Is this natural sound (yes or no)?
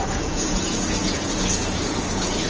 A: no